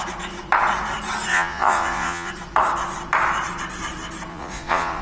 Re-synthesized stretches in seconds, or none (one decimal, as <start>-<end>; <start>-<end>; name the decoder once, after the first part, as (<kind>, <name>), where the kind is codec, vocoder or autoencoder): 1.3-2.3 (vocoder, Vocos); 4.3-5.0